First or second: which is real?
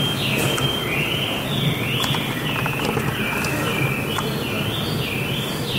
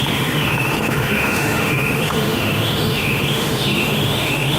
first